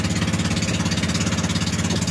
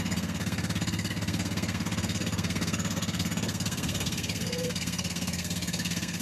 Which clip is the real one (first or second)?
first